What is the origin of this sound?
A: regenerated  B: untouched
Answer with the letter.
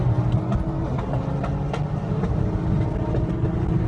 B